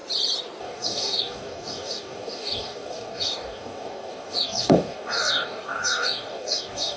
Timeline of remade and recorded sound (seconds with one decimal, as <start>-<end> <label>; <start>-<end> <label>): 0.0-0.6 recorded; 0.6-7.0 remade